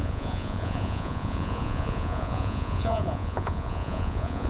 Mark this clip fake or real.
fake